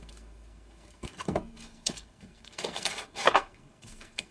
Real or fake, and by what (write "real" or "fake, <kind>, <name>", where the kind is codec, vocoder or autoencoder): fake, codec, SNAC